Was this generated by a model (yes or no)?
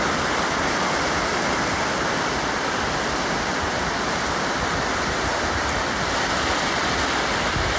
no